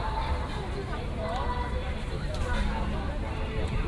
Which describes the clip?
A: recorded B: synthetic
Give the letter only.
B